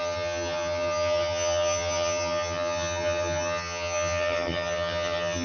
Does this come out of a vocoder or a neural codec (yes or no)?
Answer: yes